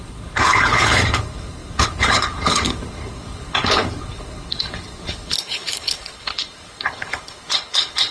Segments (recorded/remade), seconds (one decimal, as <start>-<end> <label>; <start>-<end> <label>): 0.0-8.1 remade